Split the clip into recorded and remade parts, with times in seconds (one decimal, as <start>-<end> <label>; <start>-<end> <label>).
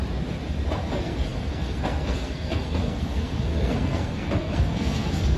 0.0-0.8 recorded; 0.8-5.4 remade